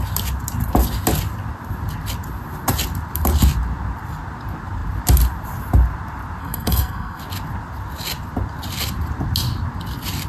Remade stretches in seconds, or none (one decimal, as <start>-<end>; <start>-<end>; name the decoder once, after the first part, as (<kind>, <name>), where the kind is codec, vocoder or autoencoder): 6.4-7.2 (codec, SNAC)